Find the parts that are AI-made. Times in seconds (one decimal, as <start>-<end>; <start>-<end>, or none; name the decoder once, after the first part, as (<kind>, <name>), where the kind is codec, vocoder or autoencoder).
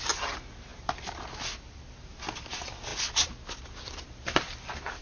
none